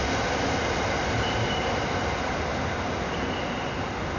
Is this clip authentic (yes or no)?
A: yes